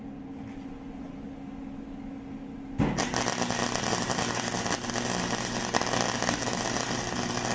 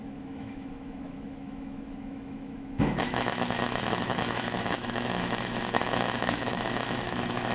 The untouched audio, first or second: first